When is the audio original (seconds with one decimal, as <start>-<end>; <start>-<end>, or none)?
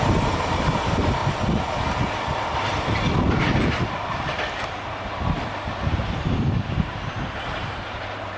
1.2-5.7